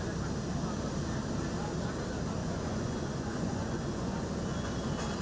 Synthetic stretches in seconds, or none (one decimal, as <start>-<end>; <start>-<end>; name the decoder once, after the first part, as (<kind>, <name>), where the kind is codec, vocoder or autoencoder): 2.4-4.7 (vocoder, Vocos)